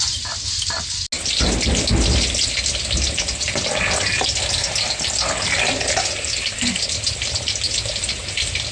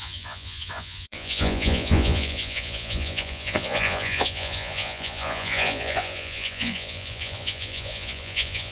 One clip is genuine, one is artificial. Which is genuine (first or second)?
first